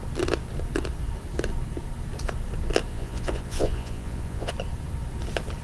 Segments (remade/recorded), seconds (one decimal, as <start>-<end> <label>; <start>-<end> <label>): 0.0-2.9 recorded; 2.9-4.5 remade; 4.5-5.6 recorded